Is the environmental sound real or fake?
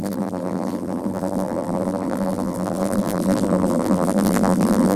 fake